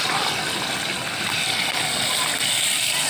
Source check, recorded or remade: recorded